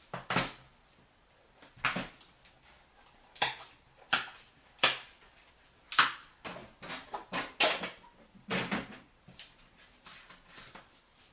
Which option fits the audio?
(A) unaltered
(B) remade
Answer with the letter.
A